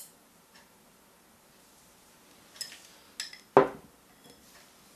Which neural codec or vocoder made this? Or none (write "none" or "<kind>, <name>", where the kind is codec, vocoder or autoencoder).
none